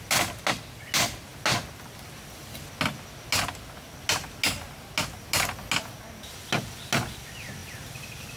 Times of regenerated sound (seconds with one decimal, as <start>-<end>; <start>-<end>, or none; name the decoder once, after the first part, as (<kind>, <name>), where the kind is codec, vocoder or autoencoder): none